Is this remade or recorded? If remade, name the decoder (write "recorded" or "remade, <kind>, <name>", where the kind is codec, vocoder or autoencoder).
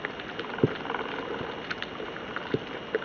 recorded